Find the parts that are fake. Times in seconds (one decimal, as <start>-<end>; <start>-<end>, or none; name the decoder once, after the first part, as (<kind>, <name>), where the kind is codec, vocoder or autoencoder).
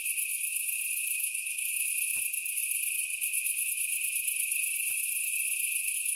1.0-1.9 (autoencoder, DAC-VAE)